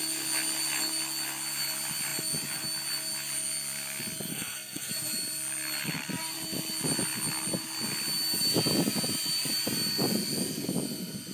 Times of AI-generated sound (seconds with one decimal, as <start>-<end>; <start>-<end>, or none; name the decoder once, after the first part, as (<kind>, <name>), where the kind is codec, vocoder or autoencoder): 4.3-4.9 (codec, SNAC)